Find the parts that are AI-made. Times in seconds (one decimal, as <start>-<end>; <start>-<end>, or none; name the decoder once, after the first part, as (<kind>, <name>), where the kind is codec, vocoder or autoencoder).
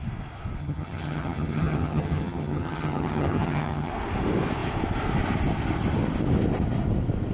0.6-3.9 (vocoder, HiFi-GAN)